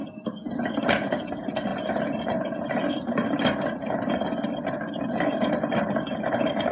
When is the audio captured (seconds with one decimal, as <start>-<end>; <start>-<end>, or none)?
0.0-6.7